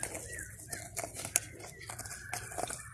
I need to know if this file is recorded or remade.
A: recorded